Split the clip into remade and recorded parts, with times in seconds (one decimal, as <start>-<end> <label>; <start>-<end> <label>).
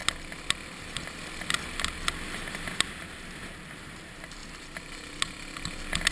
0.0-3.7 recorded; 3.7-4.4 remade; 4.4-6.1 recorded